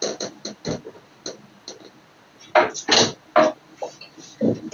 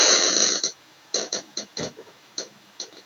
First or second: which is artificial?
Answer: second